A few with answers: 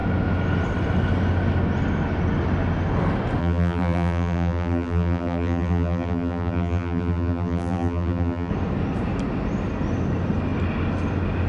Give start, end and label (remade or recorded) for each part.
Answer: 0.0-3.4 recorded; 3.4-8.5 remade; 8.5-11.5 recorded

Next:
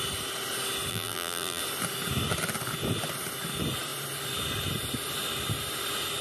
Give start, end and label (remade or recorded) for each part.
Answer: 0.0-0.9 recorded; 0.9-1.6 remade; 1.6-6.2 recorded

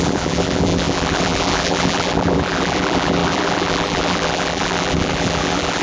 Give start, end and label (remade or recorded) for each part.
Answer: 0.0-5.8 remade

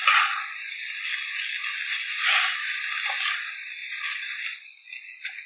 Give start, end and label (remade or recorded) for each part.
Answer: 0.0-1.9 recorded; 1.9-2.9 remade; 2.9-3.8 recorded; 3.8-4.4 remade; 4.4-5.5 recorded